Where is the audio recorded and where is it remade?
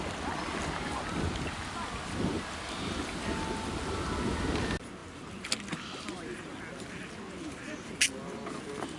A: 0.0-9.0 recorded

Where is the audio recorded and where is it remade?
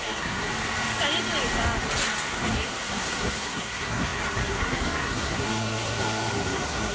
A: 0.0-0.5 remade; 0.5-2.3 recorded; 2.3-6.9 remade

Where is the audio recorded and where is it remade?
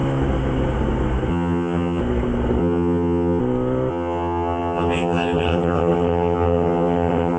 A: 0.0-1.3 recorded; 1.3-2.0 remade; 2.0-2.6 recorded; 2.6-3.4 remade; 3.4-3.9 recorded; 3.9-7.4 remade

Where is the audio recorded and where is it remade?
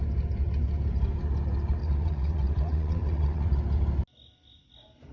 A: 0.0-1.8 recorded; 1.8-3.6 remade; 3.6-5.1 recorded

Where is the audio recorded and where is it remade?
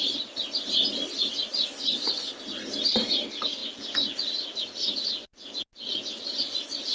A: 0.0-1.7 recorded; 1.7-2.4 remade; 2.4-6.9 recorded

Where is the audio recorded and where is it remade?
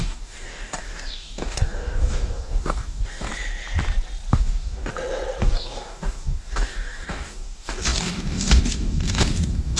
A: 0.0-3.3 remade; 3.3-4.3 recorded; 4.3-4.9 remade; 4.9-5.4 recorded; 5.4-9.8 remade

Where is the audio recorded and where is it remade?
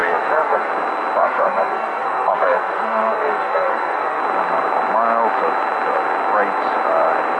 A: 0.0-0.7 remade; 0.7-1.2 recorded; 1.2-4.2 remade; 4.2-7.4 recorded